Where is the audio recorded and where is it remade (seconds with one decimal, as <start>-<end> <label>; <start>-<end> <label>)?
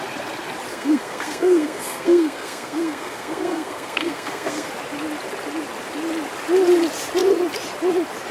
0.0-0.7 recorded; 0.7-4.7 remade; 4.7-8.3 recorded